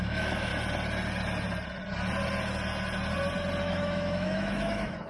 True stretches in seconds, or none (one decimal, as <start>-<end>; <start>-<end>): 0.5-3.6